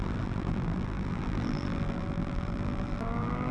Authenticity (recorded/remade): remade